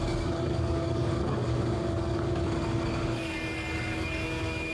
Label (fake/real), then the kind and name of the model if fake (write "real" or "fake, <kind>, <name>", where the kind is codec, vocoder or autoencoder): fake, codec, DAC